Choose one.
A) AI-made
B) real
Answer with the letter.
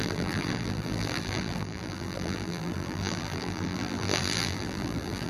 A